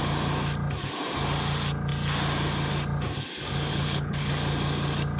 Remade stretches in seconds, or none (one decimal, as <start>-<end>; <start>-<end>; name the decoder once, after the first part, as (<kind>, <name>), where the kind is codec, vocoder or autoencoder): 3.7-4.3 (codec, HILCodec)